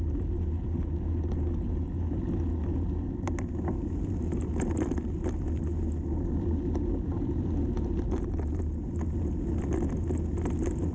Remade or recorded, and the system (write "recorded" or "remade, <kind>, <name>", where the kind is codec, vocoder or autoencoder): recorded